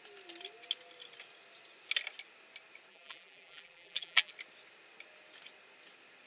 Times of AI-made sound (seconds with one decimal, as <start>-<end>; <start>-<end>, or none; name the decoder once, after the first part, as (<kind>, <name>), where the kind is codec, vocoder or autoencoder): 2.9-4.3 (vocoder, BigVGAN v2)